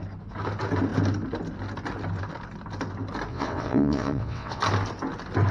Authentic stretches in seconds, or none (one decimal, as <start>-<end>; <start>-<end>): 0.0-3.3; 4.6-5.5